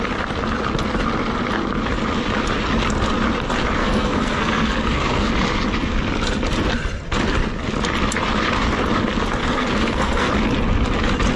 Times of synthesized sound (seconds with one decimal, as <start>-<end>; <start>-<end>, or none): 3.8-5.3; 9.4-10.3

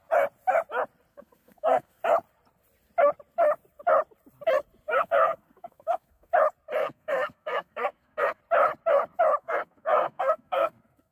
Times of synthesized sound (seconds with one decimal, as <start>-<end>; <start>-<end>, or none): 1.1-2.0; 4.9-6.3; 6.8-8.4; 9.4-11.1